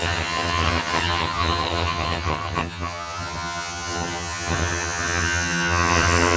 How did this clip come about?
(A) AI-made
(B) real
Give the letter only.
A